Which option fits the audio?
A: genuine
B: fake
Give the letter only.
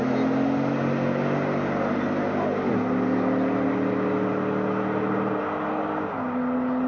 A